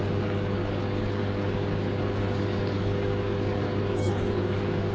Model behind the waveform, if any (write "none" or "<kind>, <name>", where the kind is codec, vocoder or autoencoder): codec, DAC